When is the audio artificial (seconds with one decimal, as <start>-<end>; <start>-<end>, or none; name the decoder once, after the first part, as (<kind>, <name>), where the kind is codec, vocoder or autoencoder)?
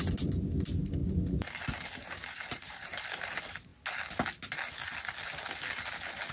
2.0-3.3 (vocoder, BigVGAN v2)